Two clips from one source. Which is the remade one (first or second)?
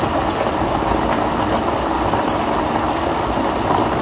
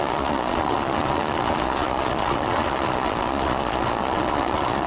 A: second